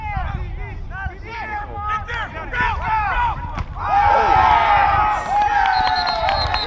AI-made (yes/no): no